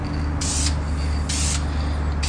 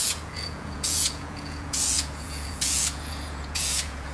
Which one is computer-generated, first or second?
second